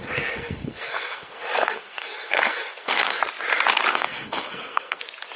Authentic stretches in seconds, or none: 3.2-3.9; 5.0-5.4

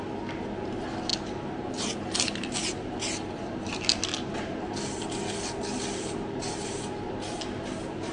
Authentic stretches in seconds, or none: 0.0-8.1

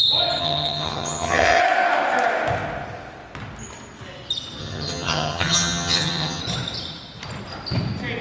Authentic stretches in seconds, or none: 0.0-0.4; 1.6-4.6; 6.4-8.2